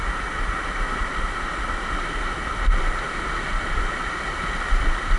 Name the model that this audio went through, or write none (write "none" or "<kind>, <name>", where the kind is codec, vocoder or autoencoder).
none